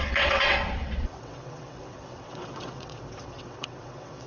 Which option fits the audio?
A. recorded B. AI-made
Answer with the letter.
B